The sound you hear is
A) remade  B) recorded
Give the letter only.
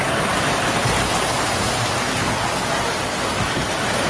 B